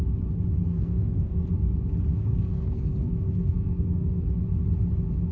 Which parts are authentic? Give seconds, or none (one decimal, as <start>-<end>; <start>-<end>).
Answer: 0.0-0.7; 1.5-2.1; 4.2-5.3